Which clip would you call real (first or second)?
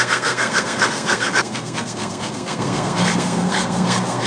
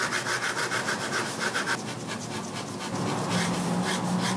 second